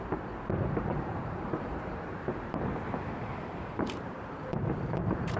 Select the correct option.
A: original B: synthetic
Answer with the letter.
B